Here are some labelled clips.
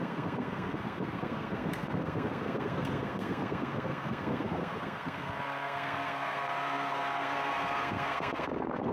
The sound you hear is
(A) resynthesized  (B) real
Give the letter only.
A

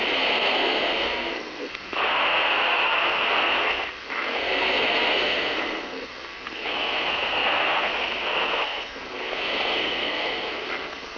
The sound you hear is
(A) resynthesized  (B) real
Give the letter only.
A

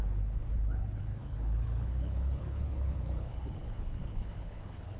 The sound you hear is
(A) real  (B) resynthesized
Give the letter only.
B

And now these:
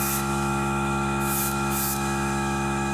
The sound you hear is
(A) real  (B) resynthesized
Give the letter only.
B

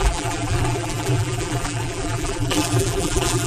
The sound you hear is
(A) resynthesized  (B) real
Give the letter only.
A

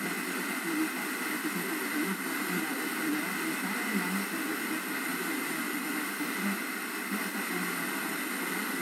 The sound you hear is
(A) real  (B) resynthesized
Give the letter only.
A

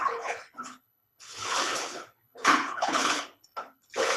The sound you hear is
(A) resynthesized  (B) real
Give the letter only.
A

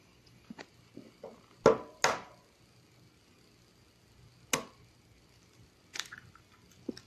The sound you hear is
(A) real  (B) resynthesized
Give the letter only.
A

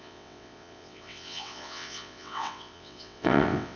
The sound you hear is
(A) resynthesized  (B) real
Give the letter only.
A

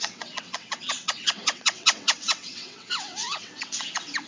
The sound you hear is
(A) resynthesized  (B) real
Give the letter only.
A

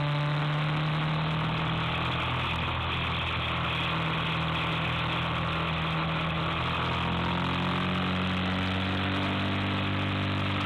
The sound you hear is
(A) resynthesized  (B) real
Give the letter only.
B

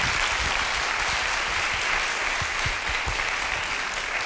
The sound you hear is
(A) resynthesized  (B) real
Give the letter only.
B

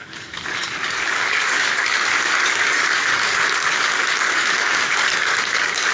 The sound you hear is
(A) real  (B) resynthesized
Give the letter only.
B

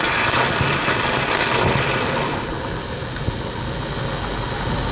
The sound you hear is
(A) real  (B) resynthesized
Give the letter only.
A